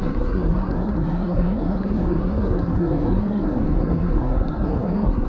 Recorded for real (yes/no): no